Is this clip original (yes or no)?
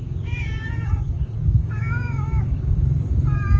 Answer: no